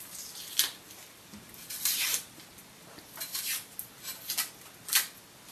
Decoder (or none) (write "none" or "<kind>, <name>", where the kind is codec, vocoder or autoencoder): none